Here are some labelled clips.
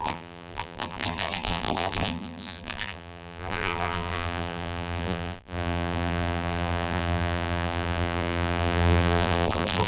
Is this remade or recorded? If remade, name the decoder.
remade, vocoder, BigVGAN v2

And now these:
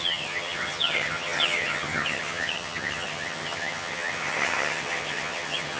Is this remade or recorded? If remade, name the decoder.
remade, vocoder, HiFi-GAN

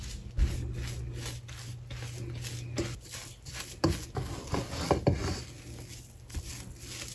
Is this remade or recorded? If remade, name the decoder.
recorded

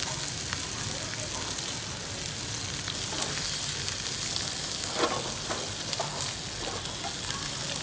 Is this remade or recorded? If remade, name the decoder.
recorded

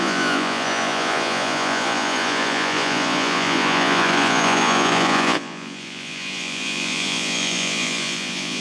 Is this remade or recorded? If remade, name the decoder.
remade, vocoder, Vocos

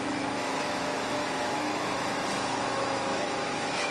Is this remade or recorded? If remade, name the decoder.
remade, autoencoder, DAC-VAE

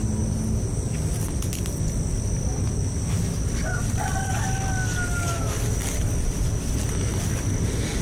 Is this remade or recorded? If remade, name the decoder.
recorded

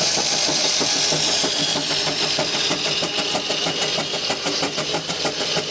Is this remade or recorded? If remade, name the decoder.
recorded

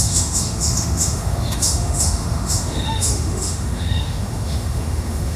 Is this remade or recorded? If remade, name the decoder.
remade, autoencoder, DAC-VAE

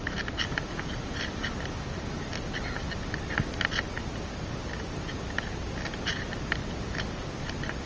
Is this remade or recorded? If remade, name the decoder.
recorded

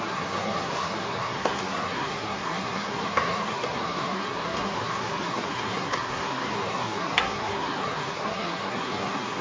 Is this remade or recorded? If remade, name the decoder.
remade, codec, SNAC